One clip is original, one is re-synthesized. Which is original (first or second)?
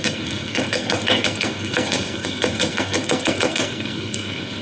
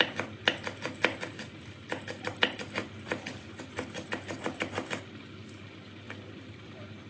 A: second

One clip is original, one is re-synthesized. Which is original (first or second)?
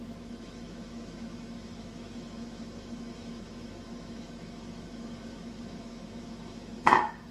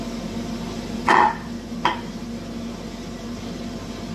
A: second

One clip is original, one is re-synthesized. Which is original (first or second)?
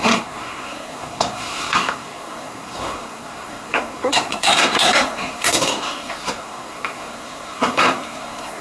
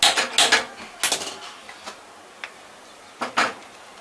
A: second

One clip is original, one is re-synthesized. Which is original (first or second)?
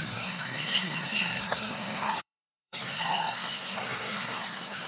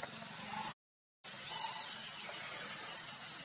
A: second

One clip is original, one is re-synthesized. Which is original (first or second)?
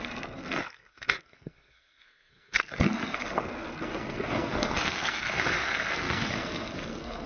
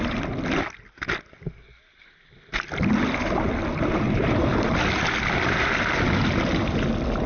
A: second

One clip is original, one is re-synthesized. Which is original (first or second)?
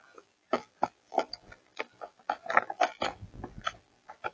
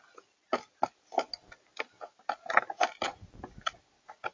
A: second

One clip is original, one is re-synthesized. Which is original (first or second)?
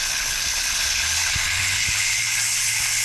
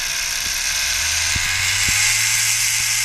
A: second